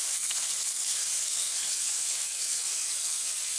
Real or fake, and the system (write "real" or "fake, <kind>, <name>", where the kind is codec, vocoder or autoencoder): fake, codec, SNAC